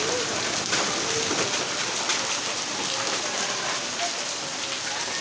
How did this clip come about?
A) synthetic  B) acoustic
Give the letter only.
B